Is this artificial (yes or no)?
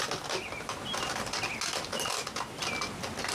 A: no